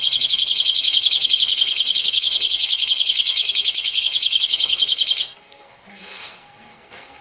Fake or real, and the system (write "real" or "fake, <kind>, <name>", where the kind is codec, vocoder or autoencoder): fake, codec, SNAC